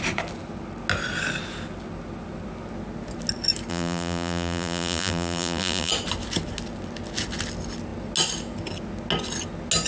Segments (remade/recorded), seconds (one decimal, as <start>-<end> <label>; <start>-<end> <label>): 0.0-3.7 recorded; 3.7-5.9 remade; 5.9-9.9 recorded